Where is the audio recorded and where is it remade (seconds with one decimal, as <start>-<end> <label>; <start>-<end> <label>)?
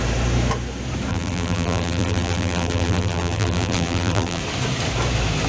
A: 0.0-1.1 recorded; 1.1-4.4 remade; 4.4-5.5 recorded